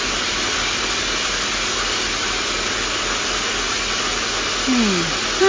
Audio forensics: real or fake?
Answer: real